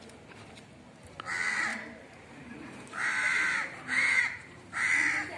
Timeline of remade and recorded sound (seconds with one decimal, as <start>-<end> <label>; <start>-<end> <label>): 0.0-1.7 recorded; 1.7-4.9 remade; 4.9-5.4 recorded